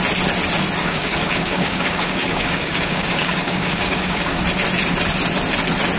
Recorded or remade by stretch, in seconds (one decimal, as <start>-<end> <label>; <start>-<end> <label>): 0.0-0.8 recorded; 0.8-4.4 remade; 4.4-6.0 recorded